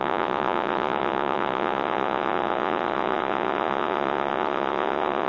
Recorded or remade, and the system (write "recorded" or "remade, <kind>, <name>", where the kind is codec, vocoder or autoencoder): remade, vocoder, Vocos